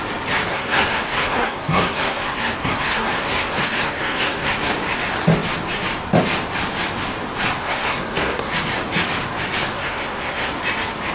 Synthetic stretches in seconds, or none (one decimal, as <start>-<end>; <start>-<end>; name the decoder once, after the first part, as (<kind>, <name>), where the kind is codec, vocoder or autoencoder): 0.5-4.7 (codec, SNAC); 7.6-8.5; 9.7-10.5